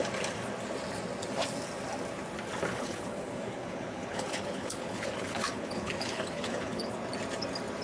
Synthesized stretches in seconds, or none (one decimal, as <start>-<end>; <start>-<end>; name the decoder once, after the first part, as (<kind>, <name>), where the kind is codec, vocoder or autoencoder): 2.7-6.9 (codec, HILCodec)